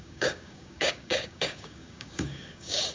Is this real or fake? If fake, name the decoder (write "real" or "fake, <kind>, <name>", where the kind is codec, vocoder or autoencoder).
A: fake, codec, DAC